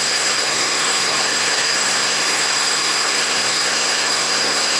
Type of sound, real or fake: fake